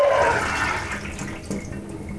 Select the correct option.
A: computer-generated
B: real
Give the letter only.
B